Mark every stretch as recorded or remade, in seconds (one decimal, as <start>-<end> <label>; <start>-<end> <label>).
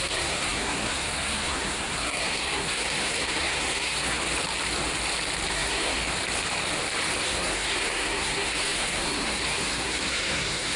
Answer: 0.0-4.2 remade; 4.2-5.5 recorded; 5.5-6.0 remade; 6.0-7.2 recorded; 7.2-10.8 remade